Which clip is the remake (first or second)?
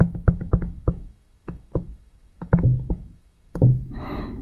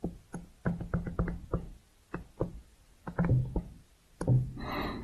first